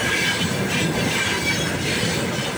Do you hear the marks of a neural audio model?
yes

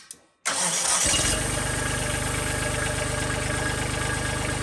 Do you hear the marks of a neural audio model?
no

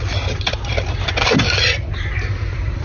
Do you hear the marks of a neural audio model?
yes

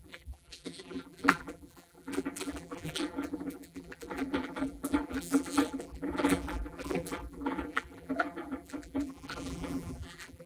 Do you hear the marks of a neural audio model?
yes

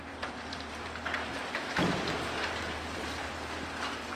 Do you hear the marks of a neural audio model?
yes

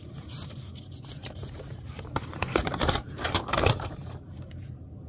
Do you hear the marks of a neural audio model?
yes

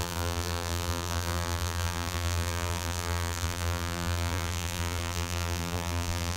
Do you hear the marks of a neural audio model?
yes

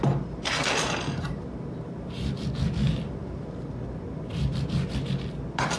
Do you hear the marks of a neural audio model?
no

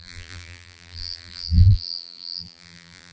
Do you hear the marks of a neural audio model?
yes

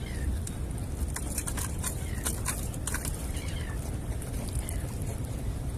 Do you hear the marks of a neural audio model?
yes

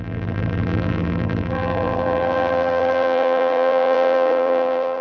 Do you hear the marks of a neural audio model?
yes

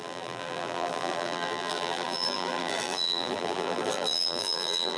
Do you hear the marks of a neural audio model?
yes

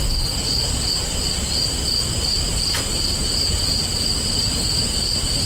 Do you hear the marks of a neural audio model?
no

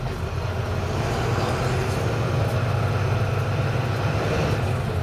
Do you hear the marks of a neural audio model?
no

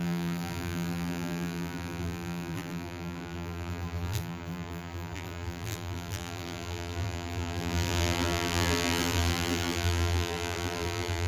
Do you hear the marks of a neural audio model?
yes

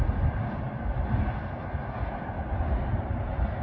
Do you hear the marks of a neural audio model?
no